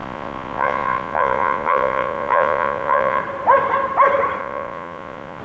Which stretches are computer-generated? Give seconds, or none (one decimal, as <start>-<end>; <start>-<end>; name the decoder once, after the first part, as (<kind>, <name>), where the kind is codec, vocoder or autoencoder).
0.0-3.2 (vocoder, Vocos); 4.4-5.4